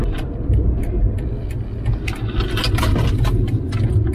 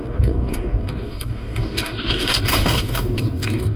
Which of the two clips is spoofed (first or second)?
second